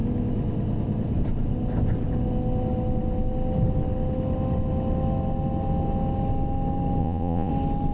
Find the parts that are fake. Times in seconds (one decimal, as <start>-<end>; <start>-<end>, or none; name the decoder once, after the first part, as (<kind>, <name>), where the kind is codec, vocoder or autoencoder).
7.0-7.5 (vocoder, Vocos)

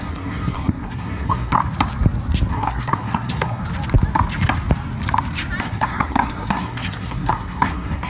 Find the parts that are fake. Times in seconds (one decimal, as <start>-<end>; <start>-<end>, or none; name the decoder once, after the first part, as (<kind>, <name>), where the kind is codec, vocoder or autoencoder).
0.0-1.6 (codec, SNAC); 2.5-3.6; 5.6-8.1

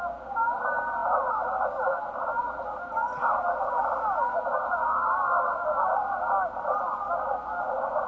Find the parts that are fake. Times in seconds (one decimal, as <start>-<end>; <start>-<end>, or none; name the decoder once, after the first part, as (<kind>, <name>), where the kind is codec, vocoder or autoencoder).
none

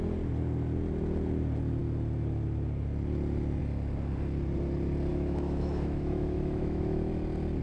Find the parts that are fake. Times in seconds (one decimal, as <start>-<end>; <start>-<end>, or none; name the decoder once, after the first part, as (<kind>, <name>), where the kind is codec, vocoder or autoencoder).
5.1-7.1 (autoencoder, DAC-VAE)

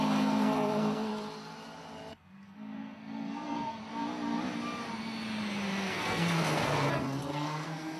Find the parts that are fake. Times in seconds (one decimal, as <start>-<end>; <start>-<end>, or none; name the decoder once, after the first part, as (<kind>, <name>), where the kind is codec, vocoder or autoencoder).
0.0-1.1 (codec, SNAC); 2.1-3.8; 5.9-8.0

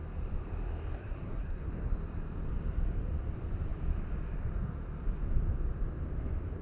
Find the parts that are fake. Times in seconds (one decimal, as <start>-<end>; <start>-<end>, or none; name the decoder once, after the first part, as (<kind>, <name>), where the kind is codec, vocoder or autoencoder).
1.0-1.7 (codec, SNAC)